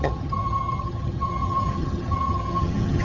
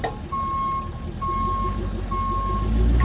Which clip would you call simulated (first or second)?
first